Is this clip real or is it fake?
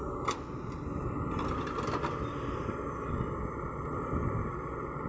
real